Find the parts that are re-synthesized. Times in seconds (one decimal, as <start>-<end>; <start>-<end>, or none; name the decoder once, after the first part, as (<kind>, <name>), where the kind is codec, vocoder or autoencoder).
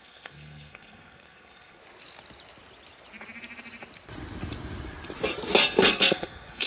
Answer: 0.0-1.8 (codec, SNAC); 5.8-6.7